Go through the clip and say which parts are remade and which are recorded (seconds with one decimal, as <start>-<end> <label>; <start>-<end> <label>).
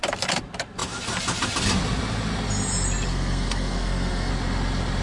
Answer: 0.0-3.1 recorded; 3.1-4.3 remade; 4.3-5.0 recorded